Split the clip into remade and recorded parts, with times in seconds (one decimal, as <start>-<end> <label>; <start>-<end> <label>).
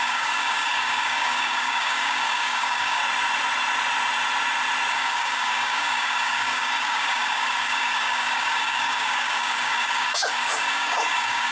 0.0-3.0 remade; 3.0-4.9 recorded; 4.9-11.5 remade